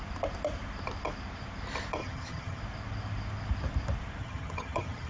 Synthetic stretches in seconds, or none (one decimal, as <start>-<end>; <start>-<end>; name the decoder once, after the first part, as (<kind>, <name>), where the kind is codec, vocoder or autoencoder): 2.0-2.6 (vocoder, HiFi-GAN); 4.2-5.1